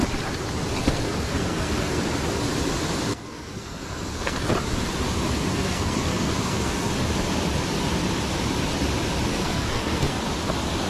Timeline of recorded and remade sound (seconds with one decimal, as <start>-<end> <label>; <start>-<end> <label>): 0.0-0.8 recorded; 0.8-2.0 remade; 2.0-3.1 recorded; 3.1-4.5 remade; 4.5-5.5 recorded; 5.5-6.9 remade; 6.9-9.3 recorded; 9.3-10.2 remade; 10.2-10.9 recorded